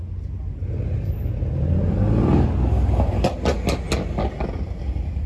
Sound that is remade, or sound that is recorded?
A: recorded